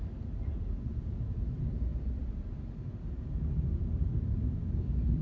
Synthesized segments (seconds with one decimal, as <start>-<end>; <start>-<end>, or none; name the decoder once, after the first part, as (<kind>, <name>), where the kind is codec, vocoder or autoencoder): none